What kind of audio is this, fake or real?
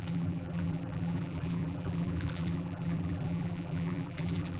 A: fake